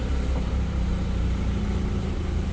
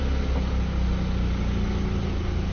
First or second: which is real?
second